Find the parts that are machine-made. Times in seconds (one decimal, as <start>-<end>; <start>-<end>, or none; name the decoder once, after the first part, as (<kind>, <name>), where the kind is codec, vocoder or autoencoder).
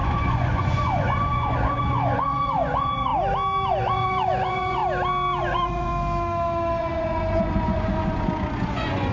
0.0-3.1 (vocoder, Vocos); 3.7-4.8; 5.4-5.9; 6.8-9.1